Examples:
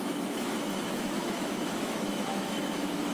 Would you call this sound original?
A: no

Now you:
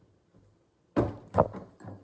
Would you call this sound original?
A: no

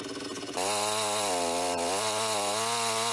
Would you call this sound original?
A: yes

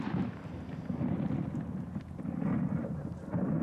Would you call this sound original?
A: yes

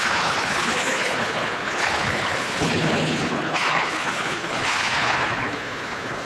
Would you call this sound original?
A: no